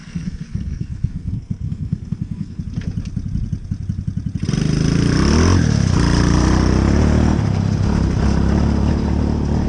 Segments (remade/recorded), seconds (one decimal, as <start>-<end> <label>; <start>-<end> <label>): 0.0-2.6 remade; 2.6-9.7 recorded